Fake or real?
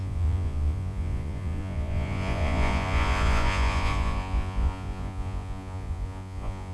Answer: fake